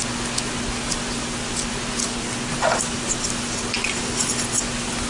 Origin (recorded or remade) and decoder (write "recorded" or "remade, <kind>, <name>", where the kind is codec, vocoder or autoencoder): recorded